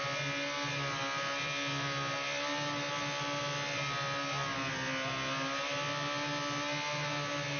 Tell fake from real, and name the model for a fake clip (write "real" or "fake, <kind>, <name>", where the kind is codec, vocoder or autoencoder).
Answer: real